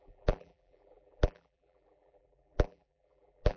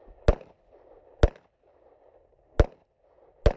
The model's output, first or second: first